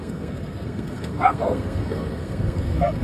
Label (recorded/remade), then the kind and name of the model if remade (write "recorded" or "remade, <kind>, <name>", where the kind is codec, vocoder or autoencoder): remade, codec, SNAC